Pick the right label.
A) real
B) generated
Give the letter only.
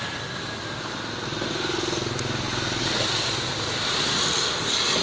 A